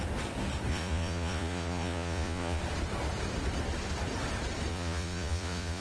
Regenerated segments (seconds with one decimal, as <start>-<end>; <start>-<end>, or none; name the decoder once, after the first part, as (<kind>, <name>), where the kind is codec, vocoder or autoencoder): 0.7-2.6 (vocoder, Vocos); 4.7-5.8